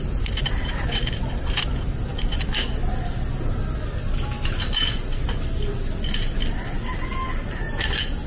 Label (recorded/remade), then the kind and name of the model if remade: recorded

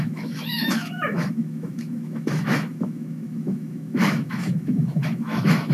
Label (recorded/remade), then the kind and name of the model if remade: remade, autoencoder, DAC-VAE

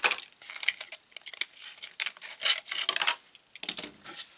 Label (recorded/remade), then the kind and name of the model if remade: recorded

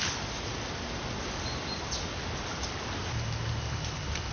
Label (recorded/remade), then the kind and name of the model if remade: recorded